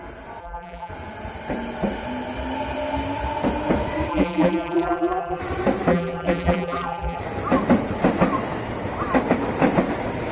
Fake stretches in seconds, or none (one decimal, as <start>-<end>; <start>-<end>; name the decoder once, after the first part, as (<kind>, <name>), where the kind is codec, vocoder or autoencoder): 0.4-0.9 (vocoder, BigVGAN v2); 4.1-5.4; 5.9-7.2